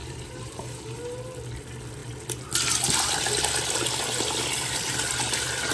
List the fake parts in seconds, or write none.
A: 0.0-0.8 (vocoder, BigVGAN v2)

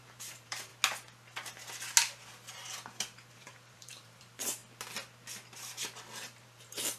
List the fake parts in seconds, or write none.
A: 0.0-0.7 (vocoder, BigVGAN v2); 3.3-4.6; 6.4-7.0

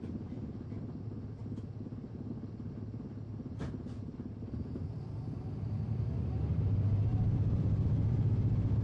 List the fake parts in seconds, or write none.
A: 7.1-8.8 (vocoder, BigVGAN v2)

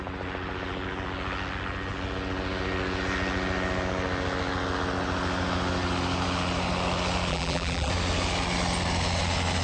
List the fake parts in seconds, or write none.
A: 7.3-7.9 (vocoder, BigVGAN v2)

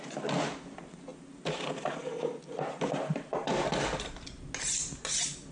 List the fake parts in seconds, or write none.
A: none

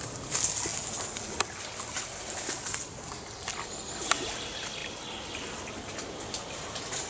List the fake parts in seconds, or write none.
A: none

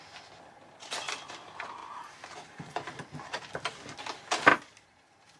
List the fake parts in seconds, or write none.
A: 1.8-3.5 (vocoder, BigVGAN v2); 4.5-5.4